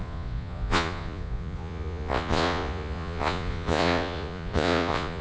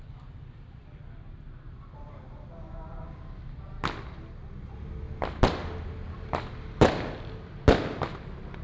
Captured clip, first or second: second